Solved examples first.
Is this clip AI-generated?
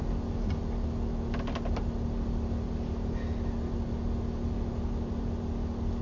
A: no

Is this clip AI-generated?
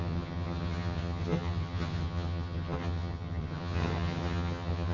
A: yes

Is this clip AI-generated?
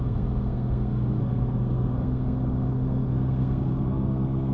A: yes